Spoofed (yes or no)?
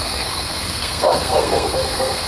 yes